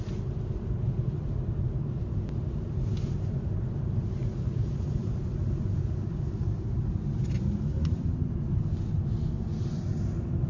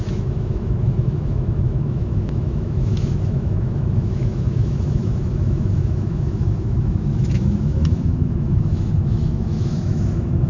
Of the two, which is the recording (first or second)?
first